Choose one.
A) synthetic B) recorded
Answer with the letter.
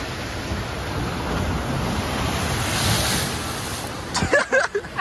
B